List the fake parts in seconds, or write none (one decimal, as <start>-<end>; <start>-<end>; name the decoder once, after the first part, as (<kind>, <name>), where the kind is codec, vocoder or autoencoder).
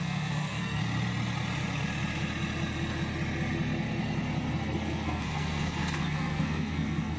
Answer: 0.0-0.8 (codec, SNAC); 4.5-7.2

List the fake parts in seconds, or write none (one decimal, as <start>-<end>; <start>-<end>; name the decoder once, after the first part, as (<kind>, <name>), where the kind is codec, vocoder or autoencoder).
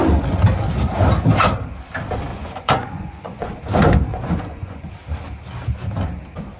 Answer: 2.3-3.5 (vocoder, Vocos); 4.1-4.9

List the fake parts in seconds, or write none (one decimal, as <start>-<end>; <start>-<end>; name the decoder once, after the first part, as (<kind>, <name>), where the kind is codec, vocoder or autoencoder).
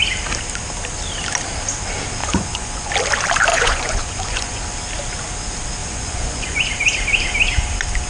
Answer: 2.2-2.9 (vocoder, Vocos); 3.5-4.6; 5.8-6.6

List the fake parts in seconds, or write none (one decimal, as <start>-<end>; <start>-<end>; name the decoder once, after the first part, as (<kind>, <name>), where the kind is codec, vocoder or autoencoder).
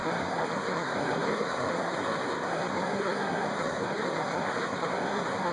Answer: 0.0-5.5 (codec, SNAC)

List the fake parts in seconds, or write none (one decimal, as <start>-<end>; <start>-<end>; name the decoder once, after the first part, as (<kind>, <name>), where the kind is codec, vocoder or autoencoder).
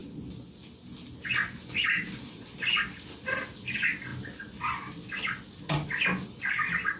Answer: none